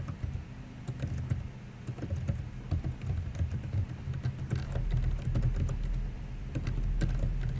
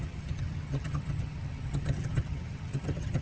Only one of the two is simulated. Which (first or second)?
second